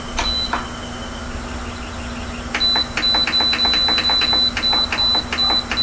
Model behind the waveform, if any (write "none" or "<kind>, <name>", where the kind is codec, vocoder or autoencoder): none